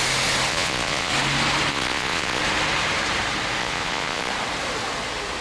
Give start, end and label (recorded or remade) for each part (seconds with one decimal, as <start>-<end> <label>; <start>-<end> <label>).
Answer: 0.0-0.5 recorded; 0.5-1.1 remade; 1.1-1.7 recorded; 1.7-2.4 remade; 2.4-3.6 recorded; 3.6-4.3 remade; 4.3-5.4 recorded